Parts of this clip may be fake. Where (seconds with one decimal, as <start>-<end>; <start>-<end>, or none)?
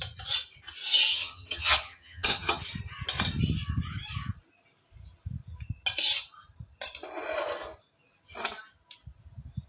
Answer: 1.1-2.6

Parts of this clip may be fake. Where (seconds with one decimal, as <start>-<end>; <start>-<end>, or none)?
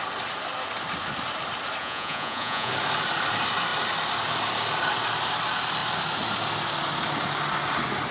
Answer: 1.8-2.7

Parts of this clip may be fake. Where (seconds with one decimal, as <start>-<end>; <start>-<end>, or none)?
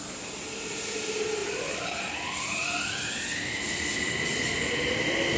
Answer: 1.4-2.1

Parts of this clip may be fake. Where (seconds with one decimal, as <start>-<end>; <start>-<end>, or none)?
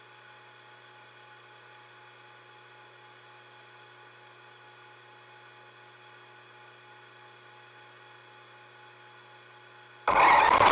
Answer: none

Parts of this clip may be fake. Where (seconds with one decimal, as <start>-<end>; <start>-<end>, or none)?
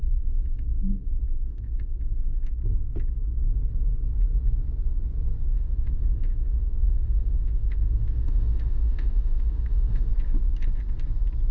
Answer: 0.0-2.6; 5.5-10.1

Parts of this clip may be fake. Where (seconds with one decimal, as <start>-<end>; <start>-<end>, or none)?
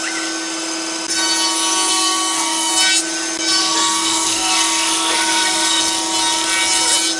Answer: 1.9-2.7; 3.6-5.8